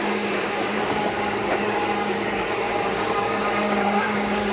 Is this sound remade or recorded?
remade